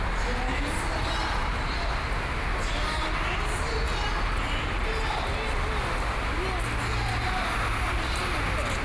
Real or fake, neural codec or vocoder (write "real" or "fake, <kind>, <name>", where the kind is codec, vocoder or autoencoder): real